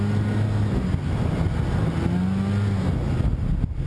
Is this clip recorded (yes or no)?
yes